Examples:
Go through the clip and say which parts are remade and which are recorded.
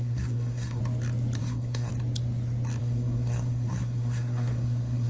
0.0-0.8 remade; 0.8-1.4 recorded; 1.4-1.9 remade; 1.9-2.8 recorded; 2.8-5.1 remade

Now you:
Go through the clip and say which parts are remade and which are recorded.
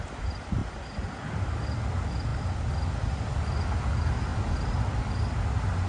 0.0-5.9 recorded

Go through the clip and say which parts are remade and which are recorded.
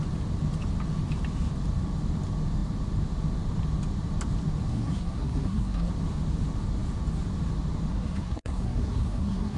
0.0-4.7 recorded; 4.7-5.9 remade; 5.9-7.9 recorded; 7.9-9.6 remade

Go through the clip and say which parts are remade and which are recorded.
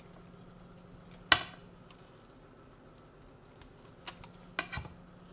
0.0-5.3 recorded